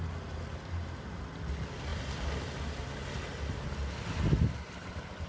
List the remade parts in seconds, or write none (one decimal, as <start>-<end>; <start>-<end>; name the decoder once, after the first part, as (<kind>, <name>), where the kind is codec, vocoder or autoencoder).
none